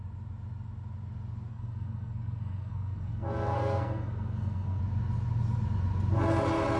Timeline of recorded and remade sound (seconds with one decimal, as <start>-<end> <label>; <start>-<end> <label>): 0.0-1.5 recorded; 1.5-4.8 remade; 4.8-6.8 recorded